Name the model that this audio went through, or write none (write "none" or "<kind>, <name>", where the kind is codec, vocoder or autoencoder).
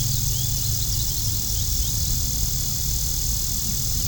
none